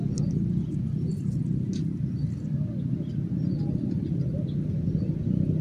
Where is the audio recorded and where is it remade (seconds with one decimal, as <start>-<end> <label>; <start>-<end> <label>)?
0.0-5.6 recorded